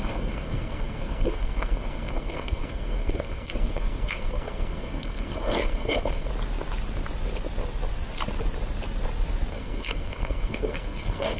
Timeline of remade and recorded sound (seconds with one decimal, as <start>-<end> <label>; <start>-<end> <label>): 0.0-6.3 remade; 6.3-9.5 recorded; 9.5-11.4 remade